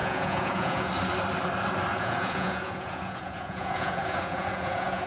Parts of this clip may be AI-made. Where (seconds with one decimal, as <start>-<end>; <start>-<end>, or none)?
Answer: 0.0-0.9; 1.9-5.1